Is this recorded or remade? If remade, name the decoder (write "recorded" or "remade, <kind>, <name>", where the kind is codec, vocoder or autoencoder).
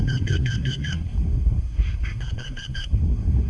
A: remade, codec, SNAC